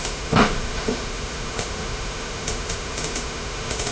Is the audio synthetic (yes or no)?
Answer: yes